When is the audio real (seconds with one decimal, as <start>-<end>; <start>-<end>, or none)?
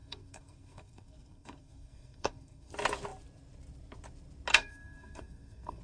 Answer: 2.7-4.5